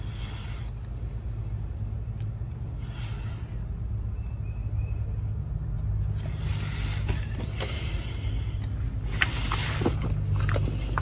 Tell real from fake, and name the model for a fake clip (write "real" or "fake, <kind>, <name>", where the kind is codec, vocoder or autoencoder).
real